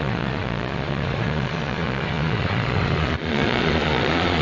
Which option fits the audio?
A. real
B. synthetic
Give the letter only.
B